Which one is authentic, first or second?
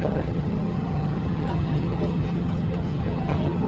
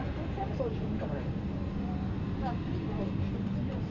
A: second